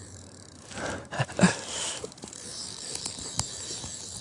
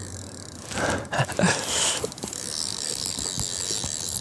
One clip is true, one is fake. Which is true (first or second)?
second